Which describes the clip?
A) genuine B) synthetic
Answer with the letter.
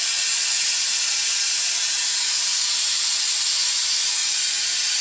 A